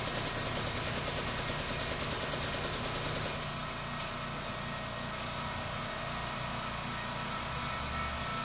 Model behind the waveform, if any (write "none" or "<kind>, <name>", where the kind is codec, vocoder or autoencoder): none